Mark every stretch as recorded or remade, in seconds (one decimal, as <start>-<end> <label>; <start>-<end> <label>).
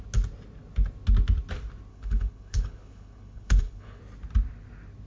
0.0-1.9 recorded; 1.9-4.0 remade; 4.0-5.1 recorded